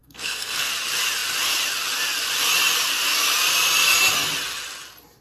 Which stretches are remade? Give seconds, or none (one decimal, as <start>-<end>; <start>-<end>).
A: 0.0-0.7

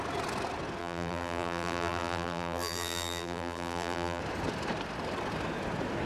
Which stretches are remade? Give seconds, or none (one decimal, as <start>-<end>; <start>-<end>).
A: 0.8-4.2

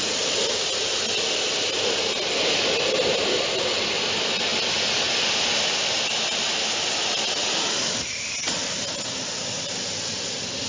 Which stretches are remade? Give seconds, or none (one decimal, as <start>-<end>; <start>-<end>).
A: 4.5-5.3

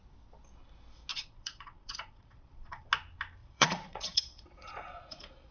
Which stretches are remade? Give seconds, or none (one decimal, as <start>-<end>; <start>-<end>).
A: 1.1-2.9; 3.4-5.5

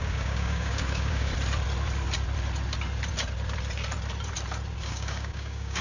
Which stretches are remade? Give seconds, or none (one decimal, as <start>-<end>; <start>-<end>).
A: 0.0-1.3; 4.8-5.8